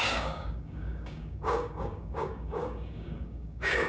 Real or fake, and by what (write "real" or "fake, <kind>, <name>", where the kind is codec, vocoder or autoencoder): fake, codec, DAC